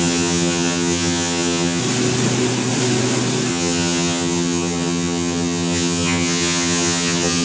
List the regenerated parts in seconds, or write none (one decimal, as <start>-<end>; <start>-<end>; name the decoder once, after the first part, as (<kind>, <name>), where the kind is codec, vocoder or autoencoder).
0.0-1.8 (vocoder, HiFi-GAN); 3.5-7.4